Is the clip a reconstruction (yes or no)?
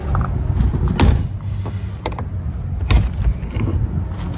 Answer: no